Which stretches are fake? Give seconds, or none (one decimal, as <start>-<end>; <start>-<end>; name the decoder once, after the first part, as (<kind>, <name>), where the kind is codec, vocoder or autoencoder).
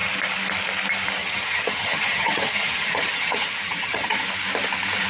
1.2-4.3 (vocoder, HiFi-GAN)